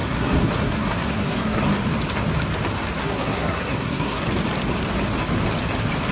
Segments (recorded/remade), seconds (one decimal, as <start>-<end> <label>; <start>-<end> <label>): 0.0-1.6 remade; 1.6-3.0 recorded; 3.0-4.2 remade; 4.2-6.1 recorded